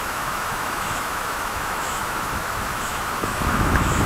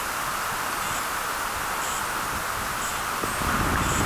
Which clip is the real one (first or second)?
second